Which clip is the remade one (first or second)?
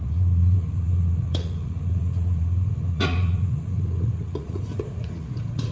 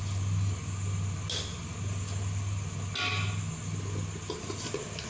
first